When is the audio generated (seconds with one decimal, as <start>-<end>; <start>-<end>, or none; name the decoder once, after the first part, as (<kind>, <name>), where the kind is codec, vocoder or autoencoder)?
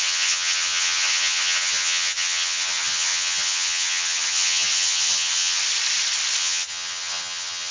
0.0-5.6 (vocoder, HiFi-GAN); 6.4-7.7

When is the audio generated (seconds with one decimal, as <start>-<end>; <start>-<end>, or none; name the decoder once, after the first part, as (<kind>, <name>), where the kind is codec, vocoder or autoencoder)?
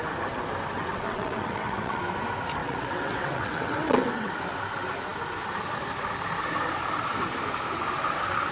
0.8-2.0 (vocoder, WaveNeXt); 2.6-4.3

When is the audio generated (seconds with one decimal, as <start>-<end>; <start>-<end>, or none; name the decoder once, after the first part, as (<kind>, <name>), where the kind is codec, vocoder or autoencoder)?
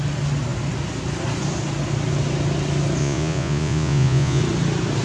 3.0-4.4 (vocoder, Vocos)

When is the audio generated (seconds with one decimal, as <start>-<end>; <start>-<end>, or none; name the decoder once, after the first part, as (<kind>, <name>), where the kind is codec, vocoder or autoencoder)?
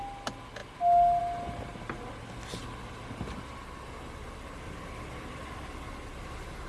none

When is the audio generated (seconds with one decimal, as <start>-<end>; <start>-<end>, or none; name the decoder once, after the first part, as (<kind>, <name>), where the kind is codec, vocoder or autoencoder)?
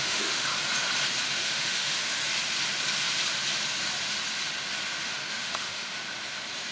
0.0-0.5 (autoencoder, DAC-VAE); 1.3-2.2; 5.3-6.0